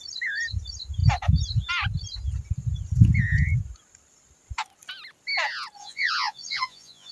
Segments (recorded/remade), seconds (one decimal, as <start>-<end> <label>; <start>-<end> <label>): 0.0-5.8 recorded; 5.8-7.1 remade